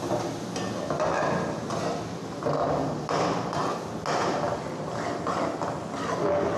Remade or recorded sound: recorded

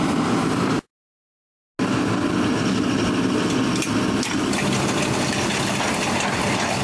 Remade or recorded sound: recorded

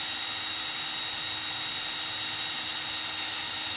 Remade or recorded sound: recorded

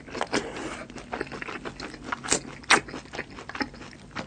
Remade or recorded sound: recorded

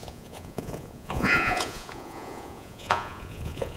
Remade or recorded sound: remade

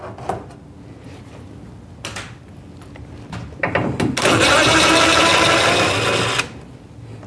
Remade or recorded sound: recorded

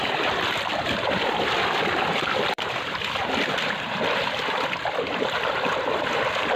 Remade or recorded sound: remade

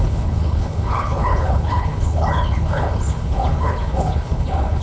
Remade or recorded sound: remade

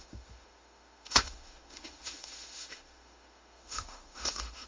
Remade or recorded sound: remade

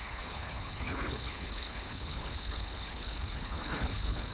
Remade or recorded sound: remade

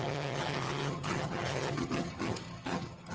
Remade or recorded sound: remade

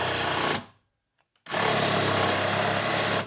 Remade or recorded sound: recorded